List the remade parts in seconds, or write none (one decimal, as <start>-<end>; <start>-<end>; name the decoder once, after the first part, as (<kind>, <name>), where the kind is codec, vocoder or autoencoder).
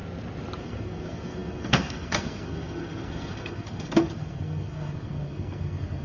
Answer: 0.6-6.0 (codec, SNAC)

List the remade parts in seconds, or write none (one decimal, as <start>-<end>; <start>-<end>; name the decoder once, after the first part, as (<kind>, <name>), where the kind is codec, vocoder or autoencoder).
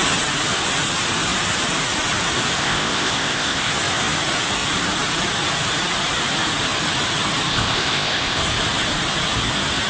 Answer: 2.6-3.7 (codec, ZipCodec); 7.5-8.4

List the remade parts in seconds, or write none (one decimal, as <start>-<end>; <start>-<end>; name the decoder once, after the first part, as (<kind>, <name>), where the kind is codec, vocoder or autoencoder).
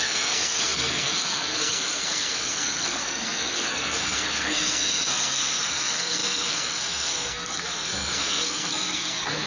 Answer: 0.0-9.5 (codec, SNAC)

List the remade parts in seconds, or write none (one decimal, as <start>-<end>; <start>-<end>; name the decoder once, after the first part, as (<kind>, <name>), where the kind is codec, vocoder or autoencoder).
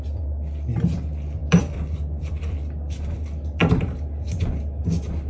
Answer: 1.4-2.5 (vocoder, BigVGAN v2); 3.6-4.6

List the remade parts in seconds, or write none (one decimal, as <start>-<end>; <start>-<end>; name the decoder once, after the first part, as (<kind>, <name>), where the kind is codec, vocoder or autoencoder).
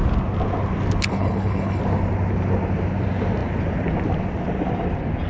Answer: 1.1-1.8 (codec, HILCodec)